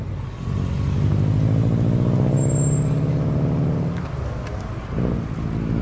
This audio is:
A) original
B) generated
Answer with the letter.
A